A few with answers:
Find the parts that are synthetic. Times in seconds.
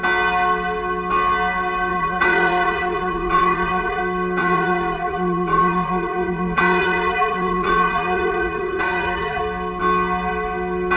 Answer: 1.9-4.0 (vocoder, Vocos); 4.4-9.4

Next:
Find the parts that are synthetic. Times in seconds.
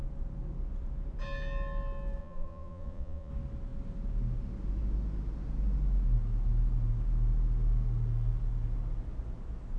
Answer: 2.2-3.3 (vocoder, Vocos)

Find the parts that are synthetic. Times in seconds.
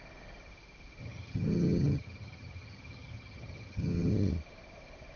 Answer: 1.0-4.1 (vocoder, HiFi-GAN)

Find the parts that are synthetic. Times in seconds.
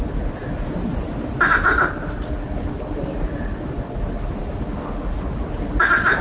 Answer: none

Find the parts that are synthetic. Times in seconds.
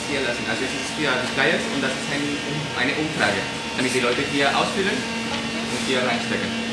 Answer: none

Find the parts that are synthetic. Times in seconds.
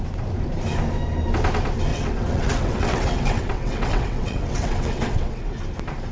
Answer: 1.9-5.6 (vocoder, WaveNeXt)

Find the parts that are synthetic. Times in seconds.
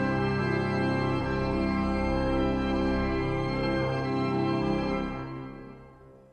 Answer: 0.0-0.4 (codec, SNAC); 1.2-6.3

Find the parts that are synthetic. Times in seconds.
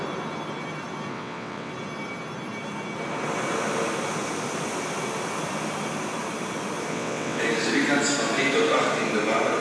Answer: 1.1-1.7 (vocoder, WaveNeXt); 6.9-7.4